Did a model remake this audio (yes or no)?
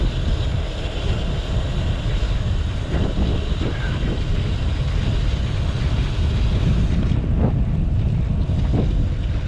no